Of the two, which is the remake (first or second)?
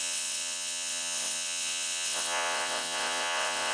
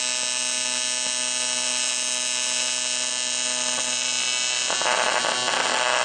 first